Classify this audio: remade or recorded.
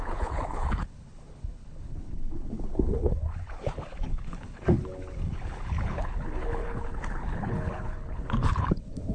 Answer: remade